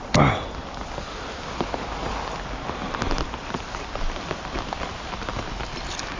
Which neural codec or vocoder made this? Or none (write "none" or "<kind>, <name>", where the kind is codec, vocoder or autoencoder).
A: none